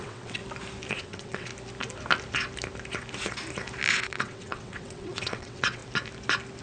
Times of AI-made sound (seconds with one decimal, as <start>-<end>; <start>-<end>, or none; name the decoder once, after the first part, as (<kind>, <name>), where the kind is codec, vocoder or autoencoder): 0.0-0.4 (vocoder, WaveNeXt); 0.9-1.5; 3.9-5.8